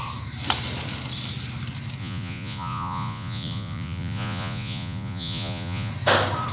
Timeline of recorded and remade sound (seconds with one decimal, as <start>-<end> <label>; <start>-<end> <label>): 0.0-2.0 recorded; 2.0-5.9 remade; 5.9-6.5 recorded